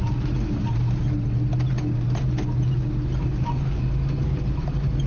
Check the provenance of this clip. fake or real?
real